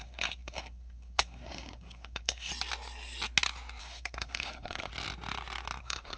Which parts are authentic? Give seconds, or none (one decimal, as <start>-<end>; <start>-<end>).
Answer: 2.5-3.8; 4.9-5.8

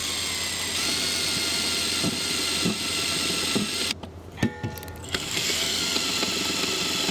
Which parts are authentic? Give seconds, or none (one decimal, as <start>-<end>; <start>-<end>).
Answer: 0.0-5.0; 5.8-7.1

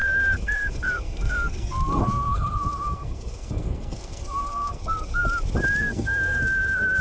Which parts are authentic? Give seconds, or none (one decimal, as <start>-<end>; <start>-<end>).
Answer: 5.2-5.8

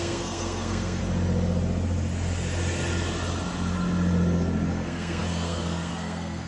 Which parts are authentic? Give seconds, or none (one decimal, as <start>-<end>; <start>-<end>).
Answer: 1.0-4.7

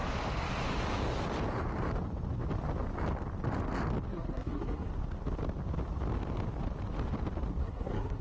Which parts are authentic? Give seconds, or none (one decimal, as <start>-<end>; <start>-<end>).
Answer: 0.0-4.1; 4.9-7.6

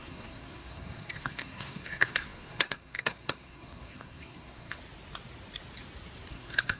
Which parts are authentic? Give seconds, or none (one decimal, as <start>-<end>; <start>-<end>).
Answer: 4.8-6.3

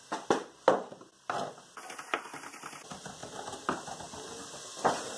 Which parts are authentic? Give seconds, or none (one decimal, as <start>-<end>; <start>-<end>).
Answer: 0.0-5.2

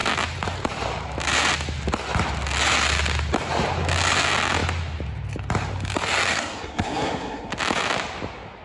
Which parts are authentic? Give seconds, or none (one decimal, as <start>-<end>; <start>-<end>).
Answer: 0.0-6.3; 7.5-8.6